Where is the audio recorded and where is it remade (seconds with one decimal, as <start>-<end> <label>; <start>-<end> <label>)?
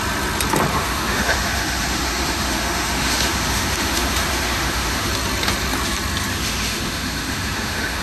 0.0-0.7 recorded; 0.7-5.1 remade; 5.1-6.3 recorded; 6.3-8.0 remade